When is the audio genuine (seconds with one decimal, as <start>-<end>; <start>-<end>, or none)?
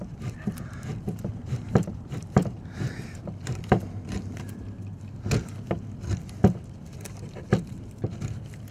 0.0-1.3; 2.4-8.7